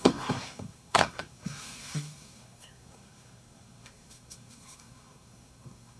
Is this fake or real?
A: fake